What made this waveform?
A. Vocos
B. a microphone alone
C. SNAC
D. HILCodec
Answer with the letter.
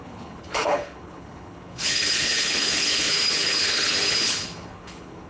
D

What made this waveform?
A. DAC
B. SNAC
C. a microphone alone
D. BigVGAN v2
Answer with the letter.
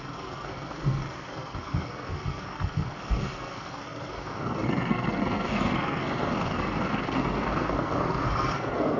B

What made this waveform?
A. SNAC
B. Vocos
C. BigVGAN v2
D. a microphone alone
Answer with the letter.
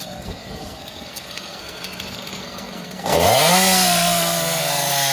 A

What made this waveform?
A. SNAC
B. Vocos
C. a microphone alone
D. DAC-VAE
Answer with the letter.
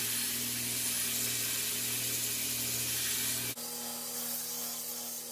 C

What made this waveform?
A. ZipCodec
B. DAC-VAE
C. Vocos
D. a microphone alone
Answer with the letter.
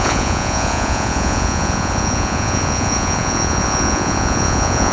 C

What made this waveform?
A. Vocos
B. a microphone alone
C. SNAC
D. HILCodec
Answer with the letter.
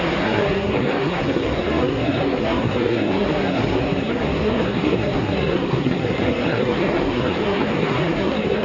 C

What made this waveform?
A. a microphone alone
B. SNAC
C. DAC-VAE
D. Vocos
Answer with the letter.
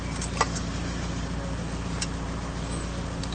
A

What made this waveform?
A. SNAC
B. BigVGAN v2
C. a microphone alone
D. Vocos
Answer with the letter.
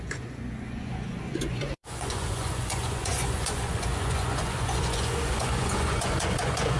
D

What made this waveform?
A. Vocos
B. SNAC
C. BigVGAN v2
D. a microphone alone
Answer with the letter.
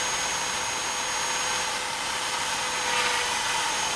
D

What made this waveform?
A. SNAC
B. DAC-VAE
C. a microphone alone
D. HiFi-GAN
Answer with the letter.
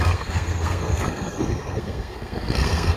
A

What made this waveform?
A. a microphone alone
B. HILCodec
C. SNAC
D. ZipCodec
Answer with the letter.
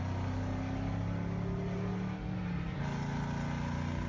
A